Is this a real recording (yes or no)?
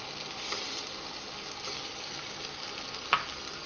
yes